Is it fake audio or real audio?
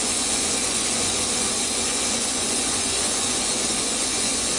fake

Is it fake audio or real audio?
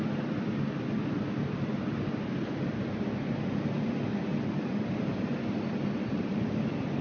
real